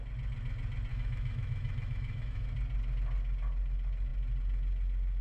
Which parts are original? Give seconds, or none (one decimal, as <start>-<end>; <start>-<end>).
0.0-0.9; 2.5-5.2